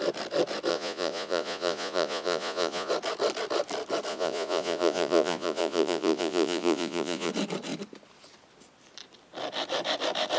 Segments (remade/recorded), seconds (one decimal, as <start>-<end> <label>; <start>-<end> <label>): 0.0-0.7 recorded; 0.7-2.9 remade; 2.9-4.1 recorded; 4.1-7.3 remade; 7.3-10.4 recorded